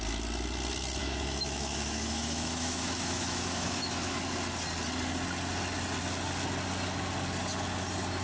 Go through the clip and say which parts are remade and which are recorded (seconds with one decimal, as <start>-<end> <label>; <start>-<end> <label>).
0.0-1.0 recorded; 1.0-4.2 remade; 4.2-8.2 recorded